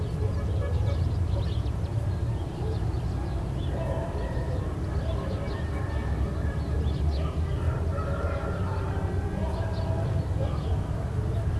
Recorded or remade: recorded